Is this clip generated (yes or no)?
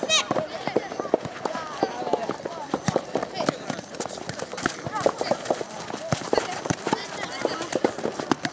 no